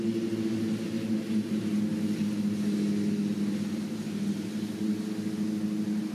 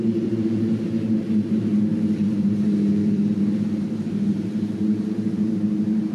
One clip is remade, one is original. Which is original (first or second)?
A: first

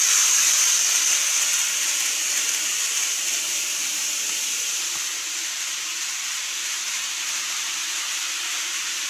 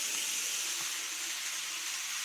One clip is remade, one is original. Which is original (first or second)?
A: second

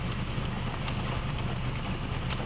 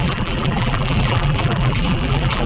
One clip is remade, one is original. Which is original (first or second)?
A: first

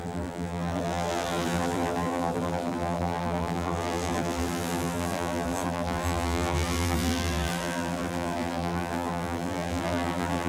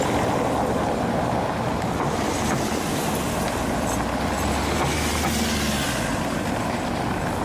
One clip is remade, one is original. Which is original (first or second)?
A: second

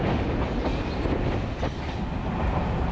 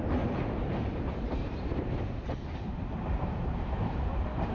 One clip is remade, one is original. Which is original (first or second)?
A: first